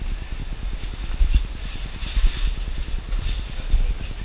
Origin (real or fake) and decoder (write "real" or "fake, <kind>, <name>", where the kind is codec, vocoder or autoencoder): real